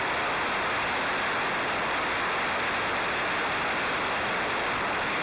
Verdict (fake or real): real